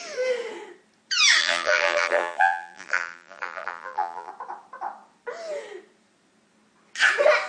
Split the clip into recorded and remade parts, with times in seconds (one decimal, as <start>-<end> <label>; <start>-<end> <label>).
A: 0.0-1.4 recorded; 1.4-4.3 remade; 4.3-7.5 recorded